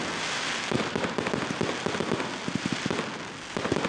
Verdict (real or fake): real